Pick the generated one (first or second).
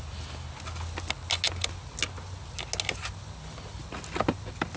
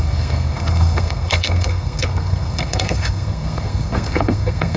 second